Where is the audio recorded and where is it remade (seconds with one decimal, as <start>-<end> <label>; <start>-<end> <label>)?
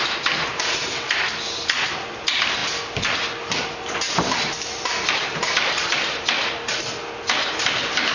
0.0-8.1 recorded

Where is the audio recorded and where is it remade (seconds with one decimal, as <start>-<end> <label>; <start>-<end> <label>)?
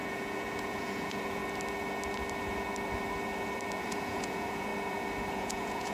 0.0-1.4 remade; 1.4-3.8 recorded; 3.8-4.7 remade; 4.7-5.3 recorded; 5.3-5.9 remade